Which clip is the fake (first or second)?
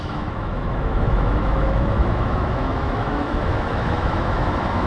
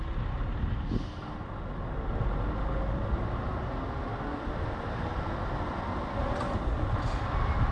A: first